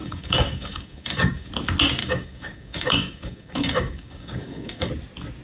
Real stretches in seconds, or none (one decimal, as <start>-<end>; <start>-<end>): 1.5-2.0; 4.9-5.4